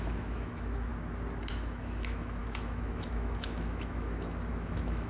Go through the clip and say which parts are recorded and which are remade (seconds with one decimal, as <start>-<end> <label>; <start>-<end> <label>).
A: 0.0-0.9 remade; 0.9-1.5 recorded; 1.5-5.1 remade